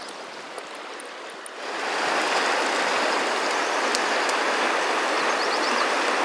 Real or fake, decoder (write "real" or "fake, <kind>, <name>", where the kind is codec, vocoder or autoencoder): real